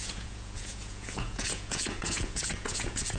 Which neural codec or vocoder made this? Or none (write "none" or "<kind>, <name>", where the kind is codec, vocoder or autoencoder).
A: vocoder, Vocos